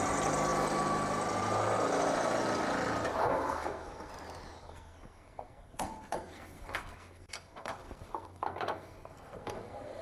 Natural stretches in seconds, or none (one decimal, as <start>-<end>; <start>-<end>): 0.0-3.2; 4.1-4.6